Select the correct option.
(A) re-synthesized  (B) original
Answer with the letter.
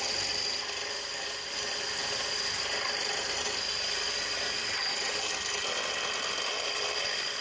B